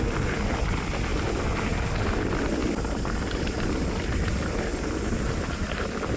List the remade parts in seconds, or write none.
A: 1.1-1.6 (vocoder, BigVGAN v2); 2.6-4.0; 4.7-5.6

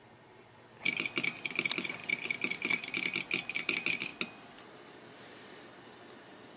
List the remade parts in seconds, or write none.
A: none

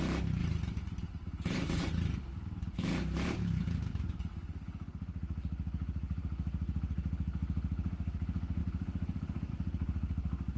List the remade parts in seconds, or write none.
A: 0.4-2.1 (vocoder, BigVGAN v2); 8.6-9.5